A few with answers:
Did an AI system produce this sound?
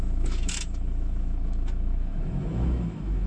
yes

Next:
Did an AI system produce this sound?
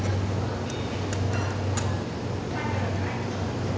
no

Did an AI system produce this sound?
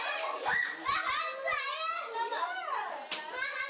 no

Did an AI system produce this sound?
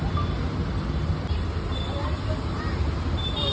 no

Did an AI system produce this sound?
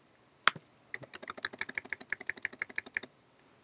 no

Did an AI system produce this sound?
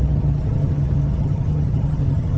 yes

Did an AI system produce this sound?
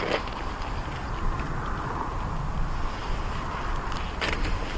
no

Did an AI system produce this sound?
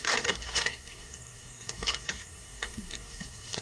yes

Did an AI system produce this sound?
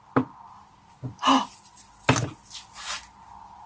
yes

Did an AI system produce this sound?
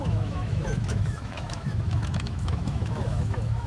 yes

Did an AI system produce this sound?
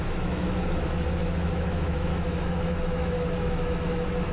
yes